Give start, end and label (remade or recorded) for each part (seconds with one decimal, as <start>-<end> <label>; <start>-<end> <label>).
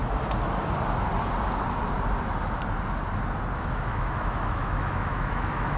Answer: 0.0-3.5 recorded; 3.5-5.8 remade